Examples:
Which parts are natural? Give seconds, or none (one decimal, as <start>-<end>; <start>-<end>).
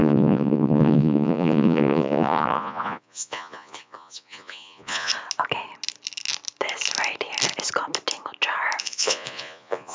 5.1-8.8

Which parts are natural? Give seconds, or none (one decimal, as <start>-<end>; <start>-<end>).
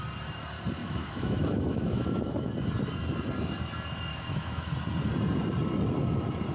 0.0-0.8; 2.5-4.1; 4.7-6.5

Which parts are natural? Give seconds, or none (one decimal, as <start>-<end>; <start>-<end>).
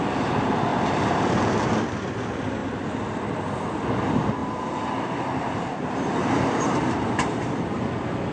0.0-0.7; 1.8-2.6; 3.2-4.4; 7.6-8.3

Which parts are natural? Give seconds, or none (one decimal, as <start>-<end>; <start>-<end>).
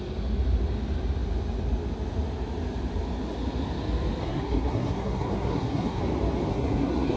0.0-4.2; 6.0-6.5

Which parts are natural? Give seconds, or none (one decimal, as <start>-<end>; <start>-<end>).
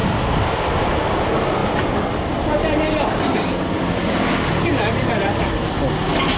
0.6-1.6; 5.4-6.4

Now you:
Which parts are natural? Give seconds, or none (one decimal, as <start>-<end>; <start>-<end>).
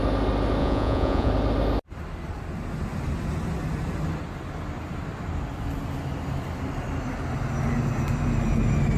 0.0-0.6; 1.3-9.0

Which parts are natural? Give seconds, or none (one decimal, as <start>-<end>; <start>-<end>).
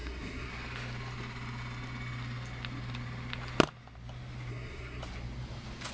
0.5-4.5; 5.0-5.9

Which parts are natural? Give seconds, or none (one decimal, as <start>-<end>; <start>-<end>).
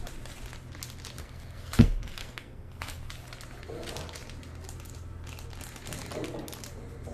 0.0-1.2; 3.1-7.1